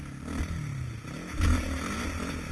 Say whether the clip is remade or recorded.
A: recorded